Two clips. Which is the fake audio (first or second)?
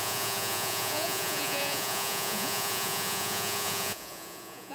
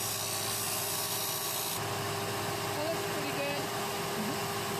first